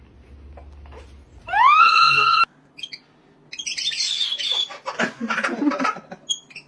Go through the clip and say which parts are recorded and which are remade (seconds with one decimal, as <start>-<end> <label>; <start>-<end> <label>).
0.0-1.8 recorded; 1.8-2.4 remade; 2.4-6.7 recorded